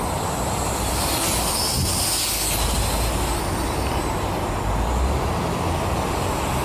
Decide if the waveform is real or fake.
real